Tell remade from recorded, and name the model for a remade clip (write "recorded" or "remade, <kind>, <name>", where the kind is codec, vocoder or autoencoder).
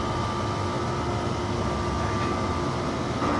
recorded